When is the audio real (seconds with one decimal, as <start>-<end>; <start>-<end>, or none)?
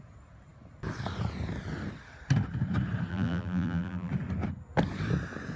0.0-3.1; 4.1-5.6